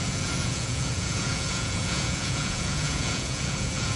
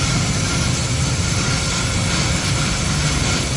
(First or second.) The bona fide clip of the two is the second